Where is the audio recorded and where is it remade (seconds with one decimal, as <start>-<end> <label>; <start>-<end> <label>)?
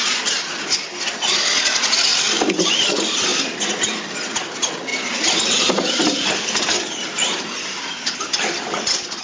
0.0-4.9 recorded; 4.9-9.2 remade